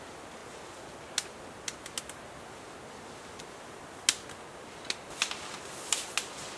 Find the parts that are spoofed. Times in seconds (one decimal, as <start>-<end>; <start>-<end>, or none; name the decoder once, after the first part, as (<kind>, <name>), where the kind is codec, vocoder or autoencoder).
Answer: none